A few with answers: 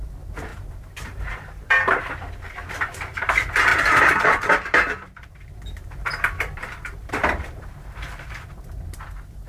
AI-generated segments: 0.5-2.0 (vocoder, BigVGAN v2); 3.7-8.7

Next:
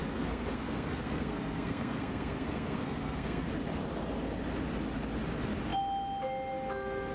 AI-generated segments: 0.0-3.5 (codec, SNAC)

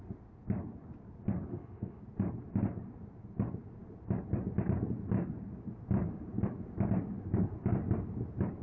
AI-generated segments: 1.5-2.0 (autoencoder, DAC-VAE)

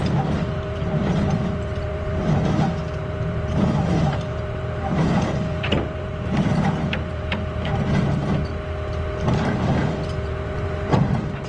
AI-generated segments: 0.0-8.5 (vocoder, BigVGAN v2); 9.5-11.5

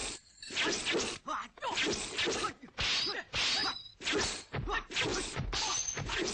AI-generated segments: 5.1-6.3 (vocoder, Vocos)

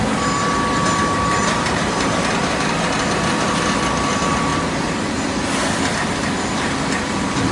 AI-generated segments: 1.4-2.8 (vocoder, BigVGAN v2); 4.5-5.4

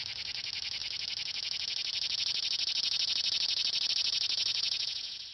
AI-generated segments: 4.5-5.3 (vocoder, Vocos)

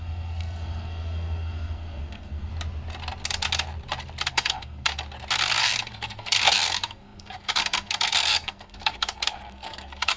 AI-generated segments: 0.0-2.5 (codec, SNAC); 4.3-4.9; 5.6-10.2